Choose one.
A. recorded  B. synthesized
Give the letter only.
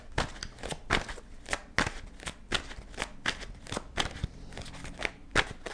A